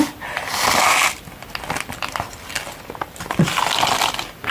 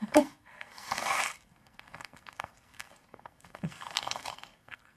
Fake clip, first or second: second